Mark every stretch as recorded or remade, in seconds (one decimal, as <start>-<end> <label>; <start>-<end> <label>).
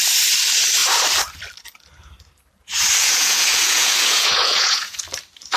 0.0-3.0 recorded; 3.0-5.0 remade; 5.0-5.6 recorded